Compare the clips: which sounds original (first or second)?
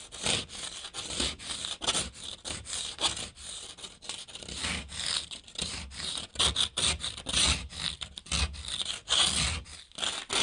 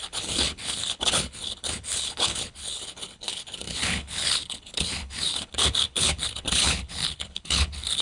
first